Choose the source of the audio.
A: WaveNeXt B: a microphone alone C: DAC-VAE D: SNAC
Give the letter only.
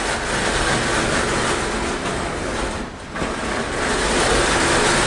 B